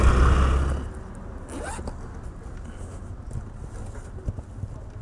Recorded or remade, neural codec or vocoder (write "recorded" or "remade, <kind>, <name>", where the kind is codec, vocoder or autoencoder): recorded